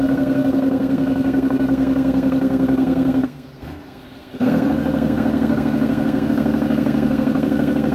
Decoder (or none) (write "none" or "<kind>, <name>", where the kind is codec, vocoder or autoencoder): codec, SNAC